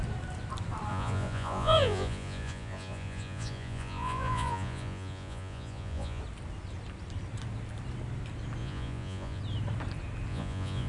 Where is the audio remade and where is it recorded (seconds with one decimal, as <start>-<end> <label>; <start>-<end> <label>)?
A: 0.0-0.9 recorded; 0.9-6.2 remade; 6.2-8.6 recorded; 8.6-9.4 remade; 9.4-10.3 recorded; 10.3-10.9 remade